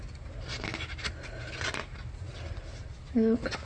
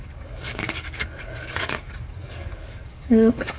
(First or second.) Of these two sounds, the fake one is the second